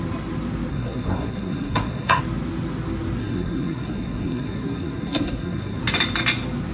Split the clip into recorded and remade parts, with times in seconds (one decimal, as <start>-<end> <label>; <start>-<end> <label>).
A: 0.0-0.7 recorded; 0.7-2.2 remade; 2.2-3.2 recorded; 3.2-5.8 remade; 5.8-6.7 recorded